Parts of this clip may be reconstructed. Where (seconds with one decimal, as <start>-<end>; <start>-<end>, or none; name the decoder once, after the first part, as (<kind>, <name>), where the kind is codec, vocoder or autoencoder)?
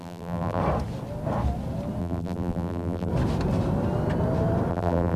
0.0-0.6 (vocoder, BigVGAN v2); 2.0-3.1; 4.7-5.2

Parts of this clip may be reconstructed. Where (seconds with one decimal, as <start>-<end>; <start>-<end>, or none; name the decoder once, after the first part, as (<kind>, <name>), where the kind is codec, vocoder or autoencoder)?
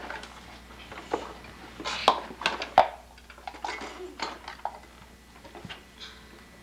none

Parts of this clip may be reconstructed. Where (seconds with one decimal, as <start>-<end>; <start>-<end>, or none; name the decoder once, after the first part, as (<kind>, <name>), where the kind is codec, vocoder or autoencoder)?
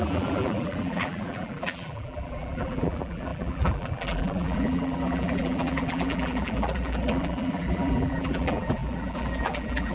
0.0-9.9 (vocoder, BigVGAN v2)